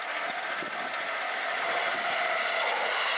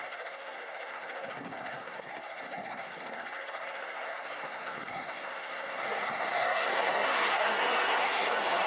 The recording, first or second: first